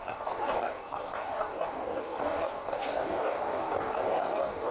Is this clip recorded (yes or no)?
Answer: no